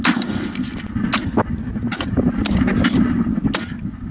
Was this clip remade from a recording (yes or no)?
no